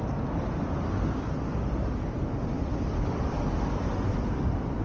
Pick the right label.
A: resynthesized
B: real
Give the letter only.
A